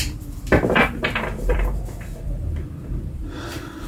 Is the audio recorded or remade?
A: remade